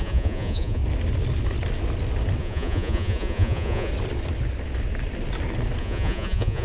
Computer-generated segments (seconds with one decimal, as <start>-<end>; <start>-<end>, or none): 0.0-0.8; 2.4-3.9; 5.8-6.6